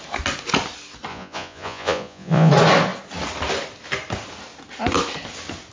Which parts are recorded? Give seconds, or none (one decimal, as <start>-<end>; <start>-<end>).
0.0-1.1; 2.5-5.7